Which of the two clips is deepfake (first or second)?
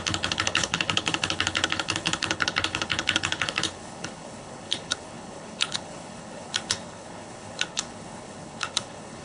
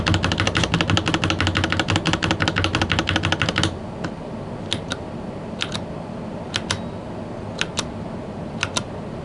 first